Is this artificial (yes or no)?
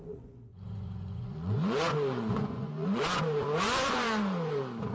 yes